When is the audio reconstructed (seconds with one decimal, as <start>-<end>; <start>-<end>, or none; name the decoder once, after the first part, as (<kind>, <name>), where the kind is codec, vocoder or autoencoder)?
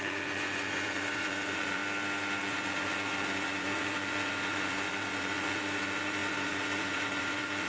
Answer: 0.0-1.8 (vocoder, Vocos); 2.4-7.7